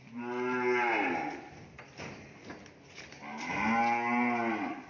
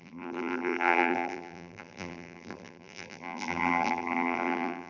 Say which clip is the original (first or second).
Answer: first